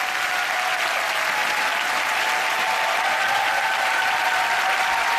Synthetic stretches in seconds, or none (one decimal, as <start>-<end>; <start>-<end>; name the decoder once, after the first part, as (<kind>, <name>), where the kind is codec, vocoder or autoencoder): none